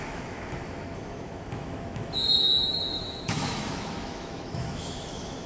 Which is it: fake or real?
fake